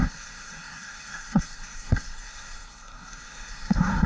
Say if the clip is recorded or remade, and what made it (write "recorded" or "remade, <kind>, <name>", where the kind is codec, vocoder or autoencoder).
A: remade, codec, SNAC